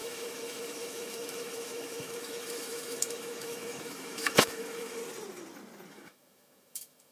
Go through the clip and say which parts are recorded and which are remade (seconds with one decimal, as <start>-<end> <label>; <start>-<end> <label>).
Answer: 0.0-5.0 remade; 5.0-5.9 recorded; 5.9-7.1 remade